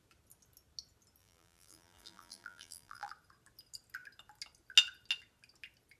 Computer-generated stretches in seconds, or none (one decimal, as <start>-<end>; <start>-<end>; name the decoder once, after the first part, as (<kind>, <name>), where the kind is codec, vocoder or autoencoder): 1.2-3.1 (vocoder, BigVGAN v2)